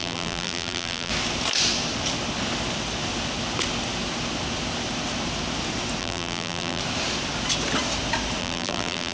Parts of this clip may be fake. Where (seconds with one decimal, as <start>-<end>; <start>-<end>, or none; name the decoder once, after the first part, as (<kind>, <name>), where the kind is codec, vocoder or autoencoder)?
0.0-1.1 (vocoder, BigVGAN v2); 6.0-6.8; 8.4-9.1